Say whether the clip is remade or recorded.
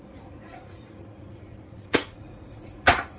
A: remade